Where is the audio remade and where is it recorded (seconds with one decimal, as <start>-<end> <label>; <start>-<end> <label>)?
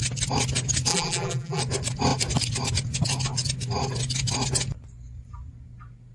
0.0-0.9 recorded; 0.9-1.6 remade; 1.6-6.1 recorded